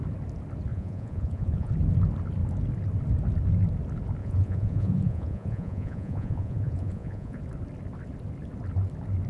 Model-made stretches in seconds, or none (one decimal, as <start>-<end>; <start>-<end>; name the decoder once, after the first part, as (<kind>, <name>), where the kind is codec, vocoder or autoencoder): 0.7-1.7 (vocoder, Vocos); 4.2-7.4